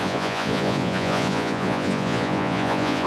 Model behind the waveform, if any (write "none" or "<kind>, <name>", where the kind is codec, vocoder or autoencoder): vocoder, Vocos